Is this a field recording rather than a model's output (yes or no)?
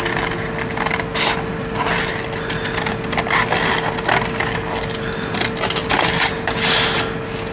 yes